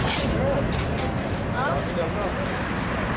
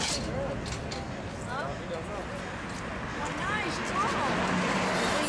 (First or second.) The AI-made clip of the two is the first